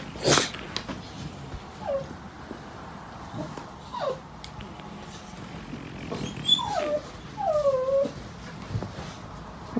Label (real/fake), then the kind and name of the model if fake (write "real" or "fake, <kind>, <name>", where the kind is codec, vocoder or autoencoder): real